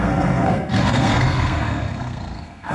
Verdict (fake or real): fake